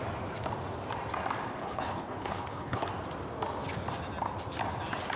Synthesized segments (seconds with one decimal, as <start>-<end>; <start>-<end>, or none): 1.6-2.9